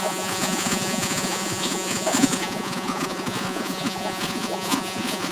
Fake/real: fake